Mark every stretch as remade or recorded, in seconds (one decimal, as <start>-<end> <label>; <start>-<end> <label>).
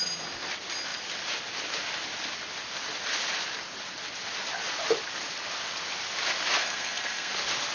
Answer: 0.0-6.6 recorded; 6.6-7.3 remade; 7.3-7.7 recorded